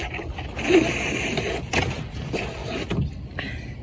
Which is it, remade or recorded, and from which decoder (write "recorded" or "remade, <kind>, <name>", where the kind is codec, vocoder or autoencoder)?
recorded